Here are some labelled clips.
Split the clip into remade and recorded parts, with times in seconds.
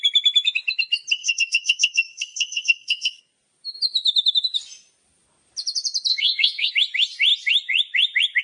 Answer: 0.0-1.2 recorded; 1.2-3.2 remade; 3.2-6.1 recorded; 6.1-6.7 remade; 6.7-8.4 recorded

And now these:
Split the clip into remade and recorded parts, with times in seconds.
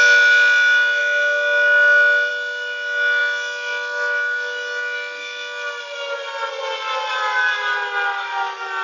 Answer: 0.0-8.8 recorded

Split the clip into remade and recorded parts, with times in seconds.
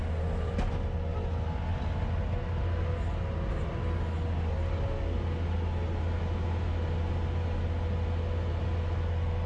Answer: 0.0-9.5 recorded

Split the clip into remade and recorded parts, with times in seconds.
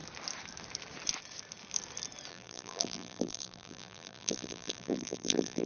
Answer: 0.0-2.3 recorded; 2.3-5.7 remade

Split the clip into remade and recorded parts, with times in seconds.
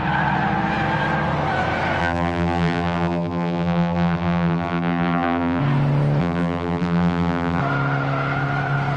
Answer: 0.0-2.0 recorded; 2.0-5.6 remade; 5.6-6.2 recorded; 6.2-7.6 remade; 7.6-9.0 recorded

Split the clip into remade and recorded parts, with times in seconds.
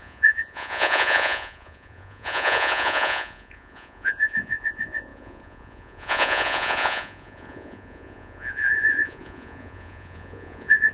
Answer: 0.0-10.9 remade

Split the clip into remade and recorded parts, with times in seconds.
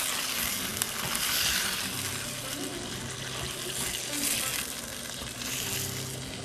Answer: 0.0-6.4 recorded